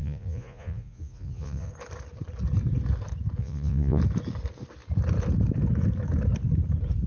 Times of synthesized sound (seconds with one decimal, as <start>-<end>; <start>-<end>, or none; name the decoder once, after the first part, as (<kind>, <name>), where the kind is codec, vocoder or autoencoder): 0.0-1.7 (vocoder, Vocos); 3.4-4.0